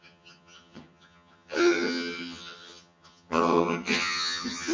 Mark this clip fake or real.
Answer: fake